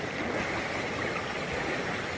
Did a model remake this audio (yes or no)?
no